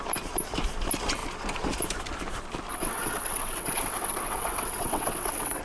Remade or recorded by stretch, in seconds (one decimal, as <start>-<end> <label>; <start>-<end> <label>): 0.0-2.7 recorded; 2.7-5.6 remade